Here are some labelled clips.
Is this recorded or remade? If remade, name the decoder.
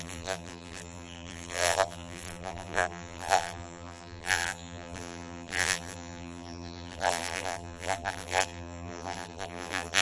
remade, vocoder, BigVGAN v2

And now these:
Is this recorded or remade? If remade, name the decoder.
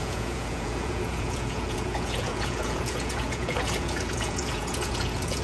remade, vocoder, Vocos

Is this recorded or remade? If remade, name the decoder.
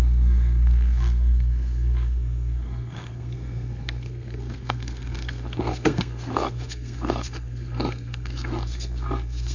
remade, codec, SNAC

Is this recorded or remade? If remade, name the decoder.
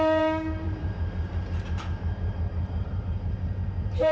remade, vocoder, BigVGAN v2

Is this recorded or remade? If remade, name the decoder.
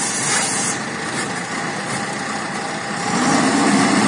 recorded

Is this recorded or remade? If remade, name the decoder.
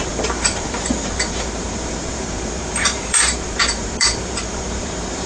remade, vocoder, BigVGAN v2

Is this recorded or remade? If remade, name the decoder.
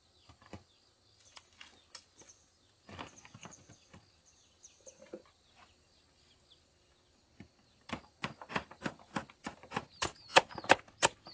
recorded